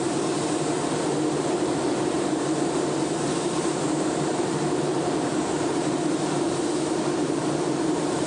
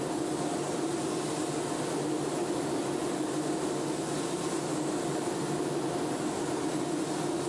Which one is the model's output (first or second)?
first